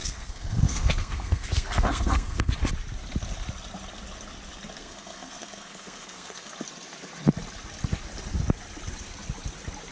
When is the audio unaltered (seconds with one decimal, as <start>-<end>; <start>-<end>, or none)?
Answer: 2.5-4.8; 6.5-9.9